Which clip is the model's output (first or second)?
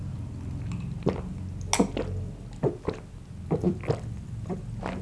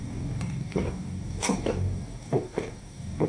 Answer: second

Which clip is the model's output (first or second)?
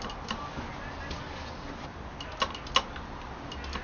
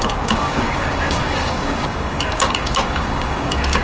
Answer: second